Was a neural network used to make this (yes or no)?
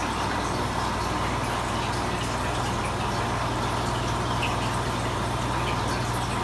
no